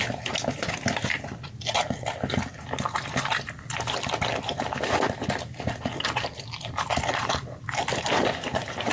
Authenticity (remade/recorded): recorded